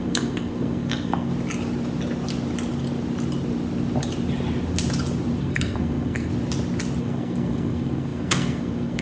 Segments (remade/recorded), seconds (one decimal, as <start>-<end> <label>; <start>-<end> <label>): 0.0-1.3 remade; 1.3-5.4 recorded; 5.4-6.3 remade; 6.3-7.0 recorded; 7.0-9.0 remade